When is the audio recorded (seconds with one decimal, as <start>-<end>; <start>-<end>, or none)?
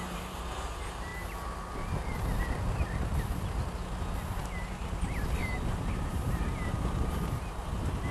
1.1-5.4